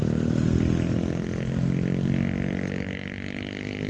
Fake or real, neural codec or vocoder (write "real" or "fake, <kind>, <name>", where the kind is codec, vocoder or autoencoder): real